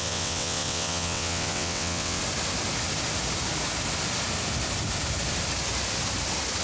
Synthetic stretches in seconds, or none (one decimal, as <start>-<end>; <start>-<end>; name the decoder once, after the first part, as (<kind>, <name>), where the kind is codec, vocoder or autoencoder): 0.0-2.2 (vocoder, WaveNeXt)